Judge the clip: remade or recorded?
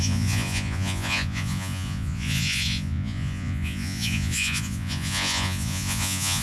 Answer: remade